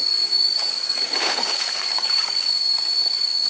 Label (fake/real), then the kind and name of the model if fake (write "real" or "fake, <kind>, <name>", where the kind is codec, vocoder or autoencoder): fake, codec, DAC